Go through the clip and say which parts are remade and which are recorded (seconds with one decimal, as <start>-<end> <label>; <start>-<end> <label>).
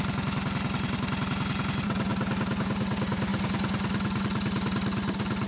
0.0-5.5 recorded